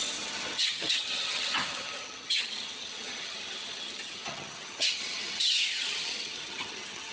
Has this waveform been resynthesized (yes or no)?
yes